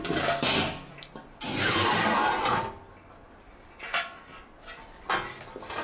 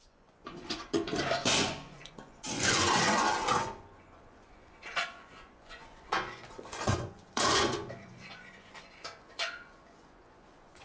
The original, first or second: first